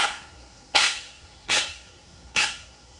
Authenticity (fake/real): fake